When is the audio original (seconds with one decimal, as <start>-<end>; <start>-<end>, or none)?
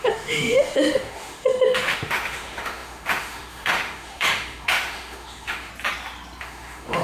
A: 5.7-6.4